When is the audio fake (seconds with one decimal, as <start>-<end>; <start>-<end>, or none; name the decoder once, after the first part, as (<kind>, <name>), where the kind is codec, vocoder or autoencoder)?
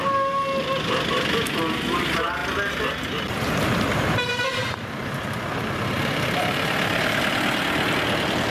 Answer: 4.6-7.2 (vocoder, BigVGAN v2)